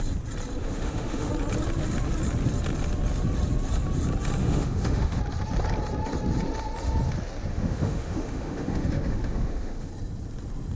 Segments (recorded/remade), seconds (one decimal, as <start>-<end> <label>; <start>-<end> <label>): 0.0-0.6 recorded; 0.6-1.3 remade; 1.3-4.4 recorded; 4.4-5.2 remade; 5.2-7.5 recorded; 7.5-9.9 remade; 9.9-10.8 recorded